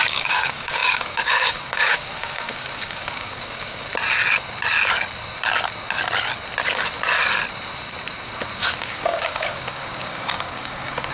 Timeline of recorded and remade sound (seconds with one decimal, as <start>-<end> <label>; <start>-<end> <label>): 0.0-3.9 remade; 3.9-8.6 recorded; 8.6-11.1 remade